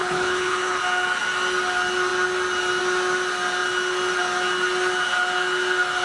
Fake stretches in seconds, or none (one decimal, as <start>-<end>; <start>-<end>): 0.0-0.8